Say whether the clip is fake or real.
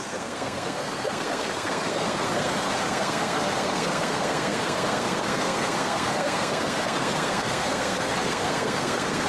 fake